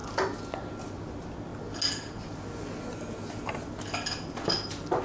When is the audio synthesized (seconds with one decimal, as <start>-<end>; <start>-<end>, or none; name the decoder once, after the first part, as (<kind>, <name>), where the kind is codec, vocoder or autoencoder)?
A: none